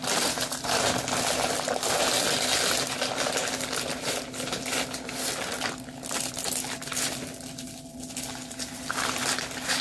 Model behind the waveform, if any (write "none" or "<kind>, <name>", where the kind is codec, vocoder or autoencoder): none